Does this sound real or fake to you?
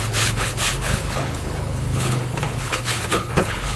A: fake